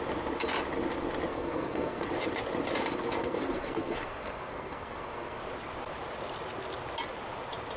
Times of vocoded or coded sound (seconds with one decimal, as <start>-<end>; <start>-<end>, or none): 1.3-2.1; 3.2-5.4